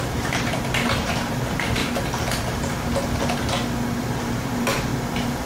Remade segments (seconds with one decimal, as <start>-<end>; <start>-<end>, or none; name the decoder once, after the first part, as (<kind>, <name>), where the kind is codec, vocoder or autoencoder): 0.0-1.8 (vocoder, BigVGAN v2); 4.0-4.9